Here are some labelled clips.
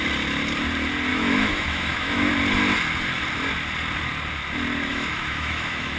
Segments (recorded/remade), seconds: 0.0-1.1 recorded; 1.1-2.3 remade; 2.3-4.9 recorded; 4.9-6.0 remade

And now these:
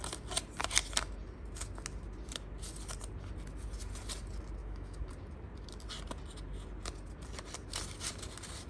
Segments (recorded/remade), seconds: 0.0-4.6 recorded; 4.6-5.1 remade; 5.1-8.7 recorded

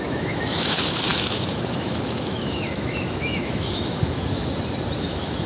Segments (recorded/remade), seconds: 0.0-4.5 remade; 4.5-5.0 recorded; 5.0-5.5 remade

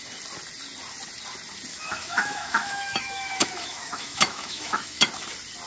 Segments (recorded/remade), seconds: 0.0-1.7 recorded; 1.7-5.1 remade; 5.1-5.7 recorded

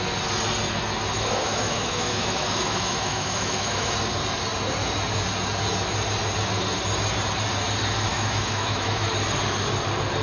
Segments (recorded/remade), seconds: 0.0-1.1 recorded; 1.1-3.9 remade; 3.9-8.1 recorded; 8.1-9.1 remade; 9.1-10.2 recorded

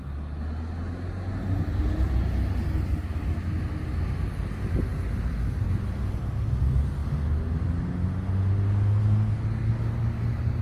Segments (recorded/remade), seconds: 0.0-10.6 recorded